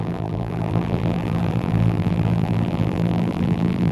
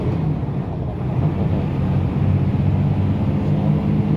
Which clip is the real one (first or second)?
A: second